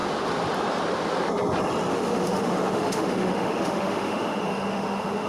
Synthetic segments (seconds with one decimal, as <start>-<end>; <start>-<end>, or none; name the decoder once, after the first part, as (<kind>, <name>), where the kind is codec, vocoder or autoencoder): 1.9-5.3 (autoencoder, DAC-VAE)